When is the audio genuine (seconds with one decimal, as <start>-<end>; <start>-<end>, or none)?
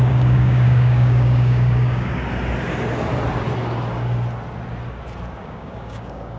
2.2-5.4